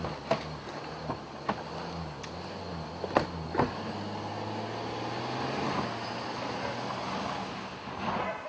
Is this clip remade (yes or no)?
no